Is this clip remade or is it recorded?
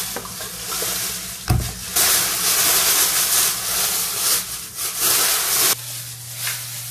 recorded